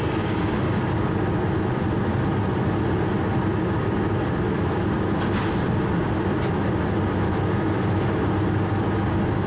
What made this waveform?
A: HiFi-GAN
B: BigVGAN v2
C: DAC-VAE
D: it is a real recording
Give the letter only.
D